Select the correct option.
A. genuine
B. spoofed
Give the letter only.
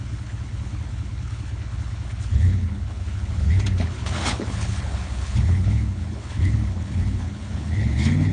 B